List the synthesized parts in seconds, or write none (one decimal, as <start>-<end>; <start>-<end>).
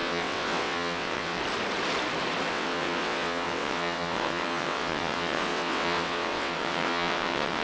0.0-1.4; 2.5-7.6